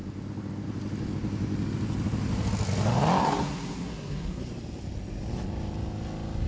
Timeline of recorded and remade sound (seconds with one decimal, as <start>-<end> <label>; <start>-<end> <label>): 0.0-3.2 recorded; 3.2-4.4 remade; 4.4-6.5 recorded